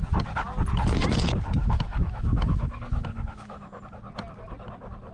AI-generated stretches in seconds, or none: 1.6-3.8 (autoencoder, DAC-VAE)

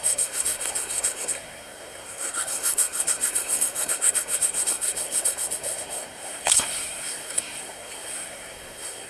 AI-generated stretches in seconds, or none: 0.0-9.1 (codec, SNAC)

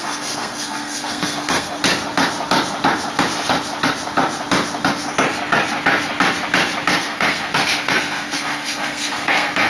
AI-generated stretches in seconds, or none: 0.0-1.8 (codec, SNAC); 7.0-9.7

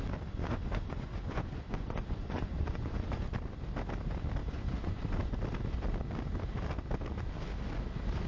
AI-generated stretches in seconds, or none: 0.4-3.2 (vocoder, Vocos); 4.4-5.0